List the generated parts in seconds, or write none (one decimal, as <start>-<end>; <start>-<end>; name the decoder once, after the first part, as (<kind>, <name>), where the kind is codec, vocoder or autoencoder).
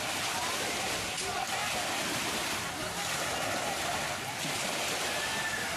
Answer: none